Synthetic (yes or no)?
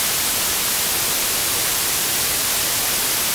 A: no